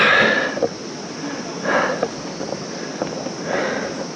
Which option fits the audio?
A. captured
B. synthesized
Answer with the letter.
A